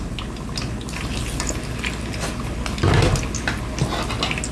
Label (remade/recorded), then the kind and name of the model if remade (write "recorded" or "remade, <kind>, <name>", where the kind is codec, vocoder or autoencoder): recorded